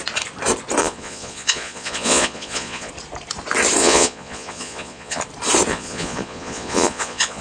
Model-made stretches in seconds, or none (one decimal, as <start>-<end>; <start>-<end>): 0.8-2.9; 3.8-5.2; 5.7-7.4